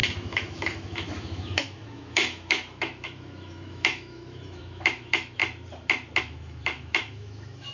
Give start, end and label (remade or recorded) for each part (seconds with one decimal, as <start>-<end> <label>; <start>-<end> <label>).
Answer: 0.0-5.4 remade; 5.4-6.2 recorded; 6.2-7.7 remade